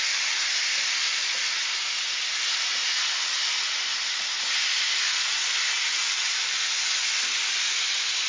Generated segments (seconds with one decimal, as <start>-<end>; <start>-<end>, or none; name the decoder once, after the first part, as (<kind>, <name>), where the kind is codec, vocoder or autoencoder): none